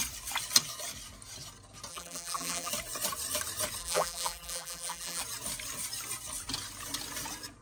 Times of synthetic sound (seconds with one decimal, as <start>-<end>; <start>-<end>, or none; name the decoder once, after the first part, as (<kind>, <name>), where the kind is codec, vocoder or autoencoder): 1.9-2.7 (vocoder, BigVGAN v2); 3.8-5.2